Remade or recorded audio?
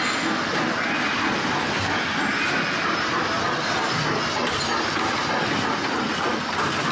recorded